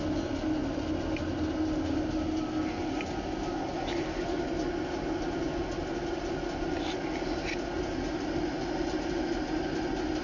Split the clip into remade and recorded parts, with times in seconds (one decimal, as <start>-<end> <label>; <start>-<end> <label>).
0.0-10.2 recorded